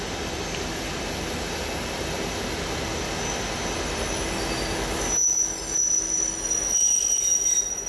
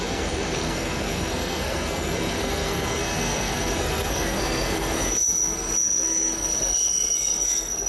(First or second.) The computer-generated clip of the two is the second